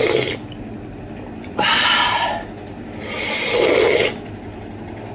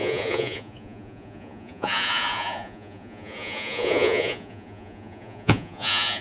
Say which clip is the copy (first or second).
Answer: second